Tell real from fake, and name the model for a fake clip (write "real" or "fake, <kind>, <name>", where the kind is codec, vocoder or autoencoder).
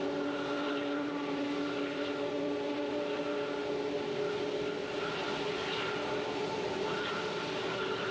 real